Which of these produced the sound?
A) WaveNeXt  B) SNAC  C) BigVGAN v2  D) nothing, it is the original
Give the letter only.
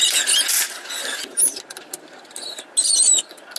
D